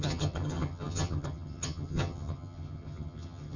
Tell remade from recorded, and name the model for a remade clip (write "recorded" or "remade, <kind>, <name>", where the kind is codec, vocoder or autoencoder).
remade, vocoder, HiFi-GAN